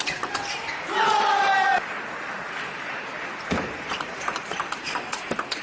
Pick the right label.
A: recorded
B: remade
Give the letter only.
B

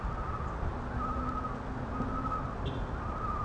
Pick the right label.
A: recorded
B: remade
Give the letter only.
A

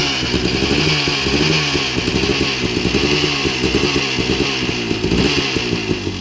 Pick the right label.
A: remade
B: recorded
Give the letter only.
B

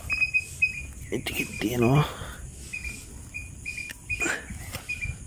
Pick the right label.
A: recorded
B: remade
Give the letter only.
A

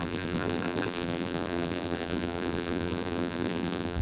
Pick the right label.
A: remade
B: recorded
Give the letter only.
A